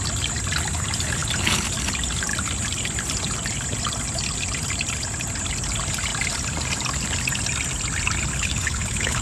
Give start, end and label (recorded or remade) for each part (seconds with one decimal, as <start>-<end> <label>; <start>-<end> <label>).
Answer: 0.0-8.3 recorded; 8.3-9.2 remade